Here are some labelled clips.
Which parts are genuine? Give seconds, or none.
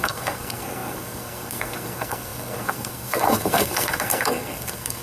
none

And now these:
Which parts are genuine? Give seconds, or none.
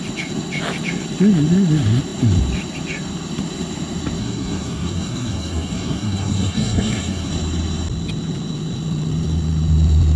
0.0-4.2; 7.3-10.2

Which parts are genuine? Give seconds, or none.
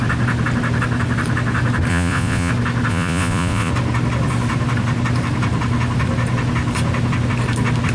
0.0-1.9; 2.5-2.9; 3.7-7.9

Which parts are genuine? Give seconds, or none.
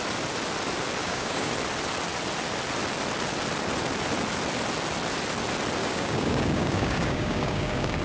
0.0-1.0; 1.5-5.8